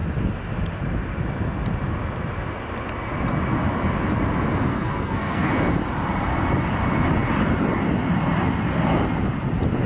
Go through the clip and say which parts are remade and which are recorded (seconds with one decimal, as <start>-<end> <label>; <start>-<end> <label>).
0.0-4.7 recorded; 4.7-5.5 remade; 5.5-9.9 recorded